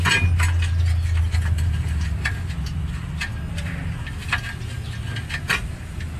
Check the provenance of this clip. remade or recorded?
recorded